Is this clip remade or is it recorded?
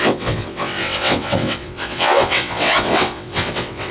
remade